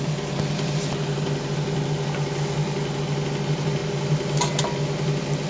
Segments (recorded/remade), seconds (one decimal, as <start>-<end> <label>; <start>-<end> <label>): 0.0-5.5 recorded